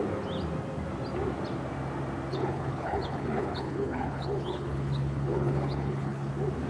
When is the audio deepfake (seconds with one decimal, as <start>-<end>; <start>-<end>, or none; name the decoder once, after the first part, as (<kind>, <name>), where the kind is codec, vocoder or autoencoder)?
2.3-6.3 (codec, HILCodec)